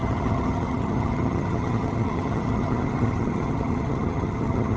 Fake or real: fake